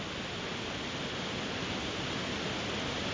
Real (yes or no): yes